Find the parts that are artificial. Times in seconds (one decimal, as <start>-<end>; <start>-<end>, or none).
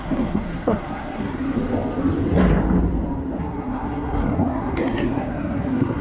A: 0.0-1.6; 3.4-6.0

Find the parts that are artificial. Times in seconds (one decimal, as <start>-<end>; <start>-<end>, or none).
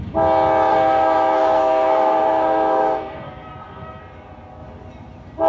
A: 0.7-4.0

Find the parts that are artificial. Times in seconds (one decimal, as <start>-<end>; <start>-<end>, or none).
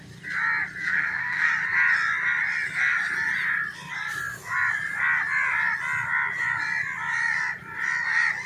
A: 0.8-1.5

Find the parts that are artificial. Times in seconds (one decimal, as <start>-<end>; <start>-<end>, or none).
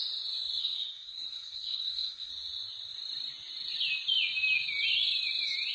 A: 0.6-2.3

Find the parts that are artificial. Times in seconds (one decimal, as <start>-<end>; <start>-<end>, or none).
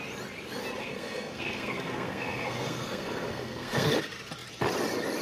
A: 0.8-3.9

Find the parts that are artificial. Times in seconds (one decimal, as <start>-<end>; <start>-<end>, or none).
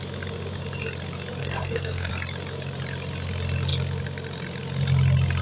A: 1.4-2.1